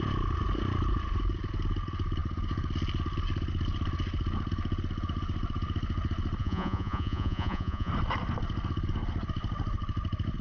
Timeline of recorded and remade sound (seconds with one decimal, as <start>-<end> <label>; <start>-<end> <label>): 0.0-6.4 recorded; 6.4-7.9 remade; 7.9-10.4 recorded